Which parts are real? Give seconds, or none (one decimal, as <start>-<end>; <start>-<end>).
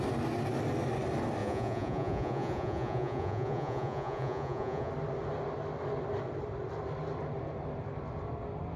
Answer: 0.0-1.4; 4.9-8.8